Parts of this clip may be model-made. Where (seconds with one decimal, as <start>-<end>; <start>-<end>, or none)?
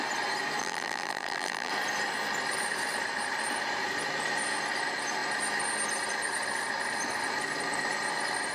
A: 0.6-1.7